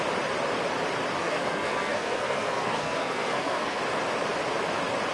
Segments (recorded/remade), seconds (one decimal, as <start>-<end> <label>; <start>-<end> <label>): 0.0-1.2 recorded; 1.2-3.8 remade; 3.8-5.1 recorded